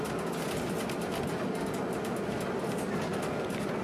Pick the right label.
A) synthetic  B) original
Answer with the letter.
B